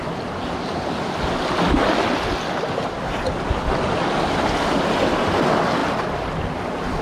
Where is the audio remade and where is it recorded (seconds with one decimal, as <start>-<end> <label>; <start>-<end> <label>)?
0.0-7.0 recorded